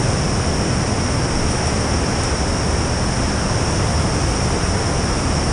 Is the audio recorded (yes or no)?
yes